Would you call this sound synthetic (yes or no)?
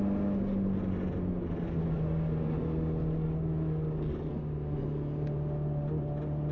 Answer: no